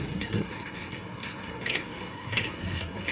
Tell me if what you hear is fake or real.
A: fake